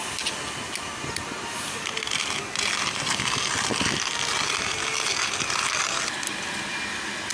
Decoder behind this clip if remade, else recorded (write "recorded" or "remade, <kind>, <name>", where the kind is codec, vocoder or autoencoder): recorded